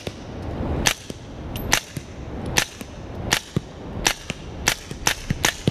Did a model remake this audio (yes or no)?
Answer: no